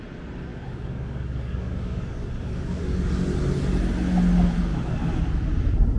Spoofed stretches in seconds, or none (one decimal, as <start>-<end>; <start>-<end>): 0.5-3.1; 4.7-5.2